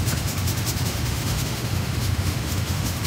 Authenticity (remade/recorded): remade